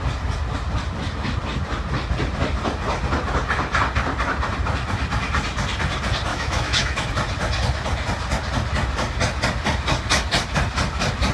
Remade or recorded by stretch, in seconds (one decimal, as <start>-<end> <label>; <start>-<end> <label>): 0.0-6.3 recorded; 6.3-7.1 remade; 7.1-11.3 recorded